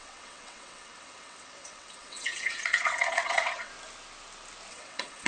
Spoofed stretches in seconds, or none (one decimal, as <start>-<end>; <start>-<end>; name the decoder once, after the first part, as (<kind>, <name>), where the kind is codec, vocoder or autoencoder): 0.0-3.7 (vocoder, WaveNeXt); 4.7-5.3